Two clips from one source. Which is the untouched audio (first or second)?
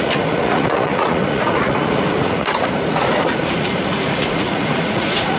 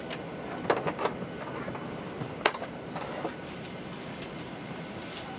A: second